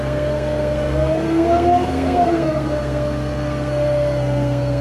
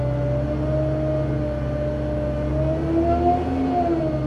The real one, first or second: second